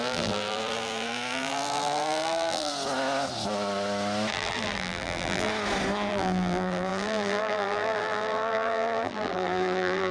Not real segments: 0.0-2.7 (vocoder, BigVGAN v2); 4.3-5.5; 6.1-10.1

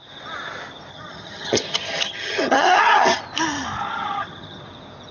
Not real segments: 0.9-3.2 (vocoder, HiFi-GAN); 3.8-4.6

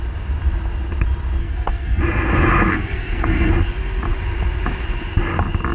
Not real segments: 1.4-2.0 (codec, SNAC); 2.7-3.5

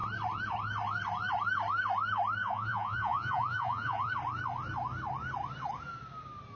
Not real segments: 2.4-4.1 (vocoder, Vocos)

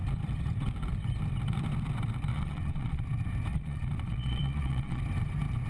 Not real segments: 2.3-3.0 (vocoder, Vocos); 3.5-5.0

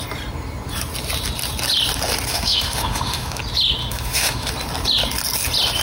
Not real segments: 2.3-3.4 (autoencoder, DAC-VAE); 3.8-4.5